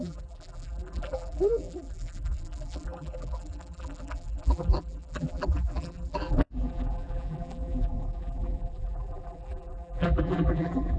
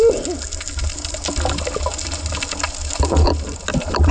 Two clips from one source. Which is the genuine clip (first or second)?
second